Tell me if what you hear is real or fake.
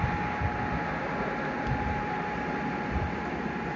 real